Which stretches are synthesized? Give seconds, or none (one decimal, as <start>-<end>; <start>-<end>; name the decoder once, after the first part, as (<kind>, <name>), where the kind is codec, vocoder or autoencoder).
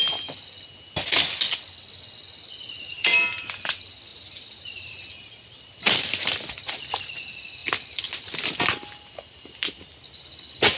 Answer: 2.9-3.4 (vocoder, BigVGAN v2); 4.1-4.9